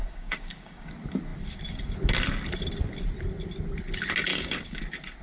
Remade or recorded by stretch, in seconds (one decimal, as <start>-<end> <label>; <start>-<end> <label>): 0.0-0.9 remade; 0.9-4.3 recorded; 4.3-4.8 remade; 4.8-5.2 recorded